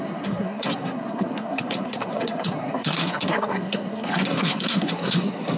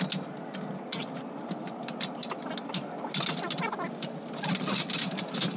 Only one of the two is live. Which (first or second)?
second